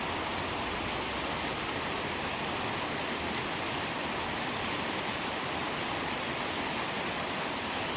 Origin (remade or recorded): recorded